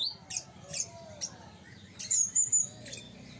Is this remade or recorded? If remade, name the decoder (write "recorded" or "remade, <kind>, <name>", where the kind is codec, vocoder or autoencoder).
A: recorded